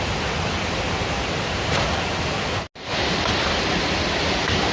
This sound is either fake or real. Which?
real